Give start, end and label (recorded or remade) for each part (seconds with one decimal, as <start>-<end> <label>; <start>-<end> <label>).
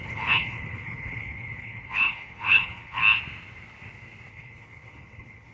0.0-3.0 remade; 3.0-4.3 recorded; 4.3-5.5 remade